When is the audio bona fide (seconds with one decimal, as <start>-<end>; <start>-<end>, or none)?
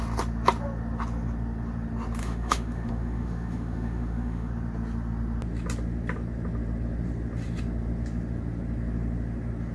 0.0-2.2; 4.5-9.7